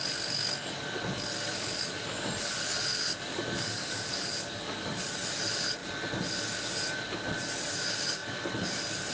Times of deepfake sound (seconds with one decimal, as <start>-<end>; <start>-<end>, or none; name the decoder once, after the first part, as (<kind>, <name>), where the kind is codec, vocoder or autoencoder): 1.5-2.3 (codec, DAC); 3.3-5.0